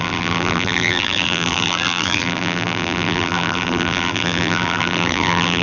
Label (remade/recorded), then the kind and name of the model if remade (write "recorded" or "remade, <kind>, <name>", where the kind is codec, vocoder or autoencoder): remade, vocoder, BigVGAN v2